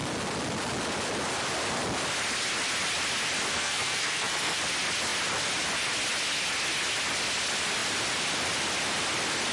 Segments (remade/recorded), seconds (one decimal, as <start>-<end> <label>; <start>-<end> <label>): 0.0-3.5 recorded; 3.5-4.6 remade; 4.6-9.5 recorded